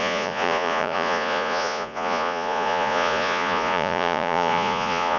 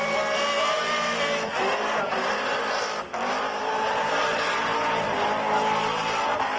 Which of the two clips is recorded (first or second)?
second